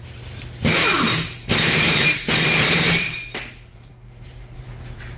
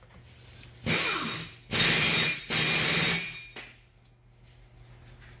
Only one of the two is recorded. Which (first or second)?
second